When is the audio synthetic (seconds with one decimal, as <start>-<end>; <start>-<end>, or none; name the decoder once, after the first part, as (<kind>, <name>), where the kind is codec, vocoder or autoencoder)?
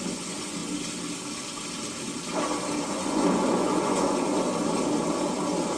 0.0-0.6 (vocoder, Vocos); 2.9-4.5